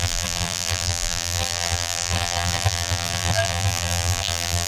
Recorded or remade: remade